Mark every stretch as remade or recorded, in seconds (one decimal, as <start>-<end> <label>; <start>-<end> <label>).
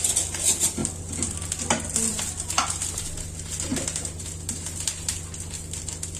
0.0-6.2 recorded